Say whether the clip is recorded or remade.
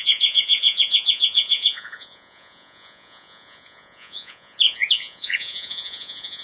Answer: remade